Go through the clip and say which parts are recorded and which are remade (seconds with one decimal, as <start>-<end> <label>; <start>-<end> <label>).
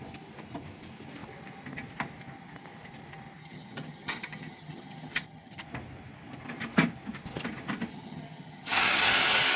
0.0-3.4 recorded; 3.4-5.6 remade; 5.6-7.9 recorded; 7.9-9.1 remade; 9.1-9.6 recorded